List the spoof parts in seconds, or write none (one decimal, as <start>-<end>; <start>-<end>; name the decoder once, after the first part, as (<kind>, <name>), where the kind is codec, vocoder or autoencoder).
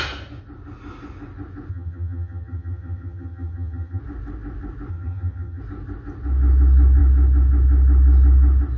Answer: 1.7-4.0 (vocoder, HiFi-GAN); 4.9-5.6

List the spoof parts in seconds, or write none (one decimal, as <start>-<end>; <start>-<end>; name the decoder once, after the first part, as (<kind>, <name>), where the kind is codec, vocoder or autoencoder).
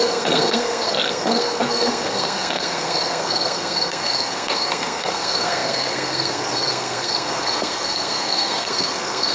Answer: 0.0-9.3 (codec, SNAC)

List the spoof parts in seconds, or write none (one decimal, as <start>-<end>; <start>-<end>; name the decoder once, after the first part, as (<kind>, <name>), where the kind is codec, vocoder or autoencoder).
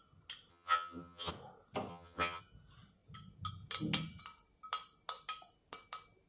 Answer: 0.5-1.3 (vocoder, HiFi-GAN); 1.9-2.4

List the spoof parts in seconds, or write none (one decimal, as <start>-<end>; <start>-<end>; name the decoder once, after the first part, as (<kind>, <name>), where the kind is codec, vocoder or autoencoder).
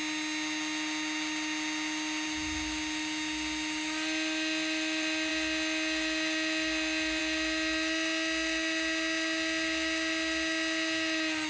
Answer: none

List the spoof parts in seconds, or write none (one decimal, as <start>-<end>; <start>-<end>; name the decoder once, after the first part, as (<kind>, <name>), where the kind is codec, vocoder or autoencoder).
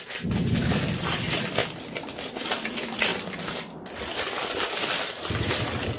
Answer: none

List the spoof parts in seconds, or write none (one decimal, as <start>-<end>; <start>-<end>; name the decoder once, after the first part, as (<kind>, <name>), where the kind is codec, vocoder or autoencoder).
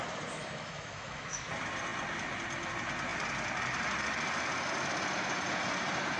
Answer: 0.4-1.5 (autoencoder, DAC-VAE)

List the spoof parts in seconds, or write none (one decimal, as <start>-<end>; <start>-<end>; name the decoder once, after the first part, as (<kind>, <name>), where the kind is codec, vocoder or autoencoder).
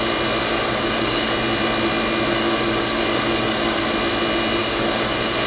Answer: 0.4-1.3 (codec, DAC); 2.3-3.8; 4.6-5.5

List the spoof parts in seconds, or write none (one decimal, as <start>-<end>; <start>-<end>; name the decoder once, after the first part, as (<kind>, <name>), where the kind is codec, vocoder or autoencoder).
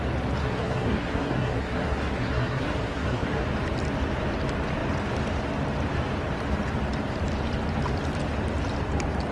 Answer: 0.4-3.4 (codec, SNAC)